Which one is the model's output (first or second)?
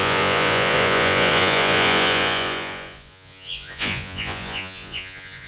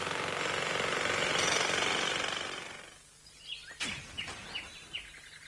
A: first